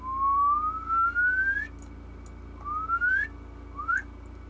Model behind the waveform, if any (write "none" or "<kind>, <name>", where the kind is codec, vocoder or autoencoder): none